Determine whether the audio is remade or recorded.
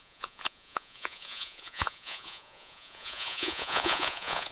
remade